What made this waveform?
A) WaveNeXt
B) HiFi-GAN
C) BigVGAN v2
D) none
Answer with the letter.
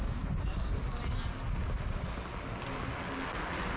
D